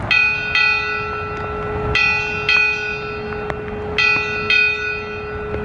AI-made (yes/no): no